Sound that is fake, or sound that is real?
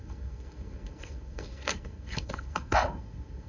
fake